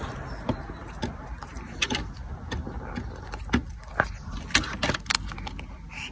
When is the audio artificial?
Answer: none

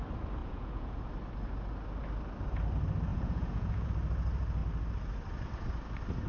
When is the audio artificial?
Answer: 0.4-1.1 (vocoder, Vocos); 3.1-3.9

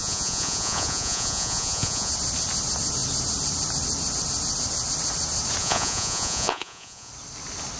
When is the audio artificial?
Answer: 0.0-2.1 (vocoder, Vocos); 5.6-7.1

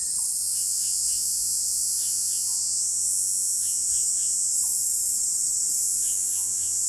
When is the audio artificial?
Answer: 0.4-4.5 (vocoder, Vocos); 5.8-6.9

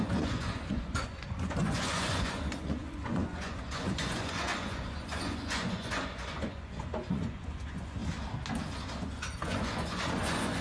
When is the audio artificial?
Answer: 0.0-8.0 (vocoder, Vocos); 9.0-10.6

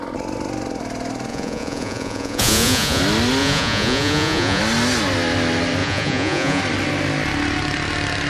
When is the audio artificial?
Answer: 1.3-3.0 (vocoder, Vocos); 3.4-4.6; 5.8-6.6